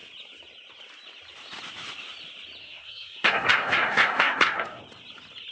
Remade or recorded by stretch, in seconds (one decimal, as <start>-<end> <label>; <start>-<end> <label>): 0.0-2.6 recorded; 2.6-4.8 remade; 4.8-5.5 recorded